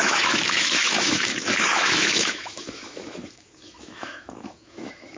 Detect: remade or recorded remade